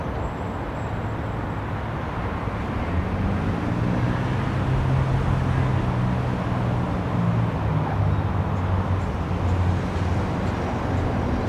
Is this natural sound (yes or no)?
yes